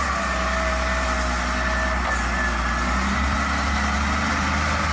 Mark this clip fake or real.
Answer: real